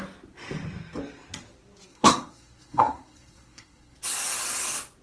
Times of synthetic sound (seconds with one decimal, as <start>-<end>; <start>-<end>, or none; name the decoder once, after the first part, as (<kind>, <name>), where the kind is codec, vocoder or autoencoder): 1.9-4.0 (codec, SNAC)